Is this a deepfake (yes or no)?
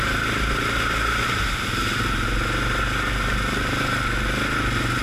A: no